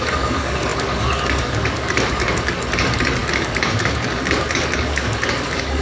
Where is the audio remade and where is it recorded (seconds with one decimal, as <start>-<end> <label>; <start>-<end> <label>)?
0.0-5.8 remade